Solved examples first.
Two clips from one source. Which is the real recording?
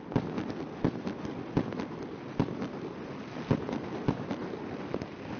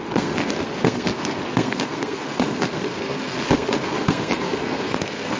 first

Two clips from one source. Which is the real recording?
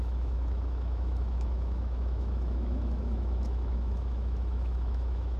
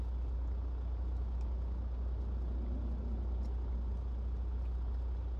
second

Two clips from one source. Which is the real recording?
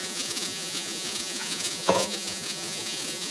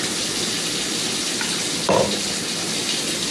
second